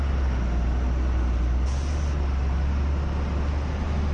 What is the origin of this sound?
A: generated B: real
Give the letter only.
B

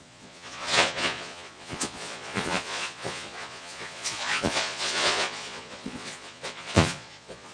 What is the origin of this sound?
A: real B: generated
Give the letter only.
B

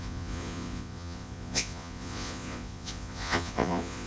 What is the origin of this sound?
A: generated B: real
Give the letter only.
A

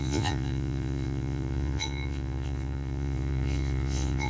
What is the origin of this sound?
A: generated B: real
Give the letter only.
A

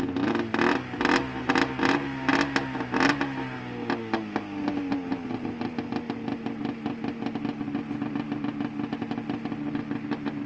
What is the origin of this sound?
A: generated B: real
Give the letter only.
B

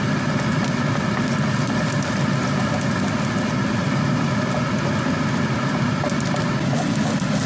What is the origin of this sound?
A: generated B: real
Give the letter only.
B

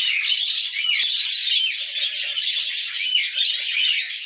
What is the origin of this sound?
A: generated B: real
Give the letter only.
B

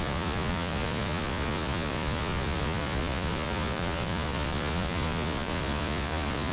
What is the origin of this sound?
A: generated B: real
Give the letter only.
A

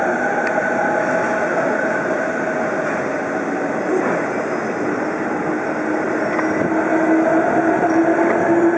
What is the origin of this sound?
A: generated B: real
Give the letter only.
B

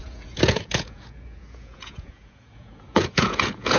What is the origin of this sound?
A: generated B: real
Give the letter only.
A